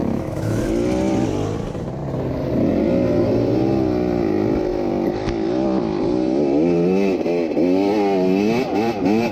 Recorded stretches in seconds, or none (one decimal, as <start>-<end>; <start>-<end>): 0.6-9.3